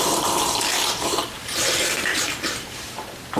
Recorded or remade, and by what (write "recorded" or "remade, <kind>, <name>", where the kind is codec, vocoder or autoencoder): remade, vocoder, BigVGAN v2